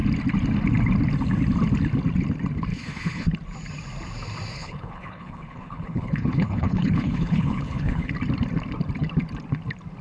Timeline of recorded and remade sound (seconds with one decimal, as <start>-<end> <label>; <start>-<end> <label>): 0.0-2.7 recorded; 2.7-3.3 remade; 3.3-4.5 recorded; 4.5-8.1 remade; 8.1-10.0 recorded